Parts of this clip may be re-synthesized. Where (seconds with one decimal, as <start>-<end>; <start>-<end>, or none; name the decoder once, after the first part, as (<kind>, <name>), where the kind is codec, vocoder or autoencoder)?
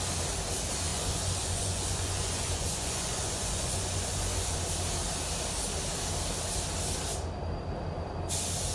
0.9-4.6 (vocoder, Vocos)